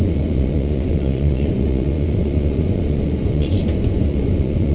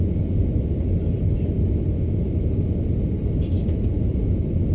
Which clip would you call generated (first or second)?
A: first